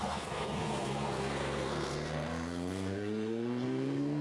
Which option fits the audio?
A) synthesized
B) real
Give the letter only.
A